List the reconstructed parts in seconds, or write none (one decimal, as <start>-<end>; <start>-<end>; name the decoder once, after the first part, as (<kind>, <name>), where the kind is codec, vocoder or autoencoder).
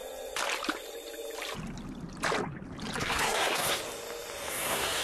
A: 3.0-3.8 (codec, SNAC); 4.5-5.0